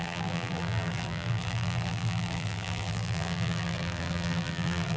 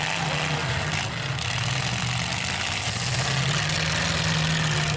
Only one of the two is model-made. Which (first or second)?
first